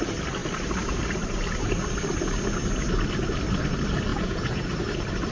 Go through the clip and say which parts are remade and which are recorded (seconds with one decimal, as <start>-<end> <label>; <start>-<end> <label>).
0.0-4.1 recorded; 4.1-4.7 remade; 4.7-5.3 recorded